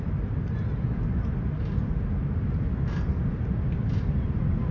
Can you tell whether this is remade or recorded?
recorded